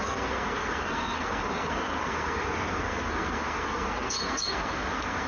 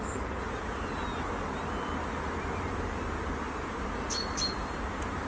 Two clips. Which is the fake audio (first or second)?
first